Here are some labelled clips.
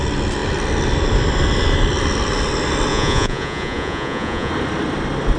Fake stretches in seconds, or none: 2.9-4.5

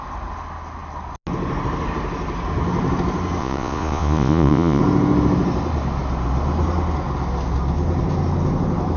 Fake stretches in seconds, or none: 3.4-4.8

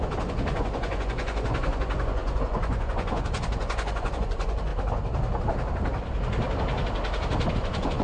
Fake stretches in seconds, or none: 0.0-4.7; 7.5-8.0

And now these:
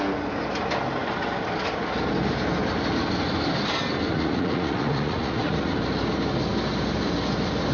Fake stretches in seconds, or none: 4.1-5.7

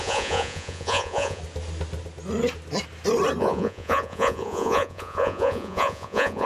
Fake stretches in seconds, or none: 0.0-1.4; 3.4-6.5

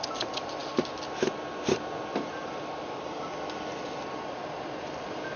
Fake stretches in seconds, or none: none

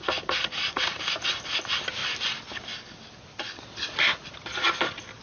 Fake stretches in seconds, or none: none